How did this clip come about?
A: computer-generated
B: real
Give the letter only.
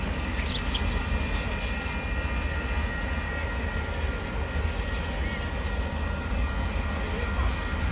B